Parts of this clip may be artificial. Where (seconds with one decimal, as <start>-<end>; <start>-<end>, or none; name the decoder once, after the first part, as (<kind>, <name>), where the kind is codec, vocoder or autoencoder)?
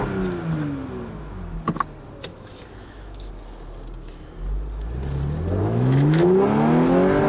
2.3-3.3 (autoencoder, DAC-VAE); 5.6-6.2